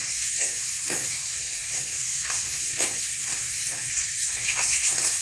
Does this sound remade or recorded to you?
remade